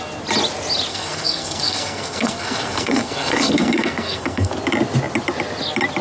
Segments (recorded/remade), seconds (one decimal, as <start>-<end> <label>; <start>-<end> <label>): 0.0-0.9 recorded; 0.9-4.5 remade; 4.5-6.0 recorded